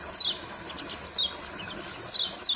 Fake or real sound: real